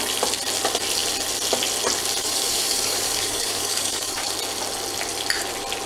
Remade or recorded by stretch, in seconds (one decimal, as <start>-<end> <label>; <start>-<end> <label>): 0.0-2.2 recorded; 2.2-4.3 remade; 4.3-5.9 recorded